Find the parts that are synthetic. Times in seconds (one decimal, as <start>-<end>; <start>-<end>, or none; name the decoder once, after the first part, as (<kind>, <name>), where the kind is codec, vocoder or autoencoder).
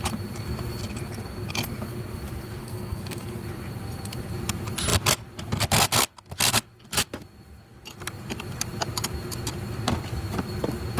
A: 2.6-3.4 (codec, SNAC)